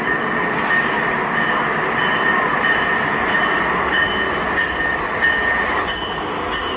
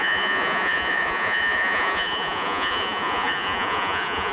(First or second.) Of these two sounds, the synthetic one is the second